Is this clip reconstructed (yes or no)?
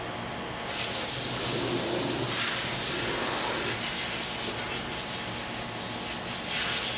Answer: no